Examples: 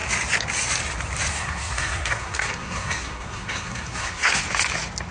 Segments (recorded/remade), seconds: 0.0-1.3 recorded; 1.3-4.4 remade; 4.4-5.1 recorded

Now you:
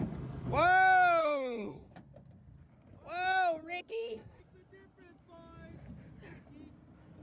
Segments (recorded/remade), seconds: 0.0-1.2 recorded; 1.2-1.9 remade; 1.9-3.9 recorded; 3.9-4.4 remade; 4.4-7.2 recorded

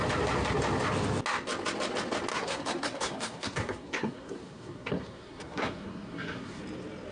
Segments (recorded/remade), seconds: 0.0-2.3 recorded; 2.3-6.6 remade; 6.6-7.1 recorded